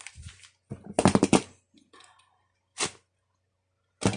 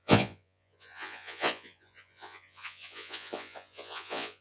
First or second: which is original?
first